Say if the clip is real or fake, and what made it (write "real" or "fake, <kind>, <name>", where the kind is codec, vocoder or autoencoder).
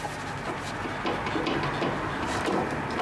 real